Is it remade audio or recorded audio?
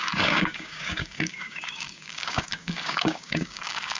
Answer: remade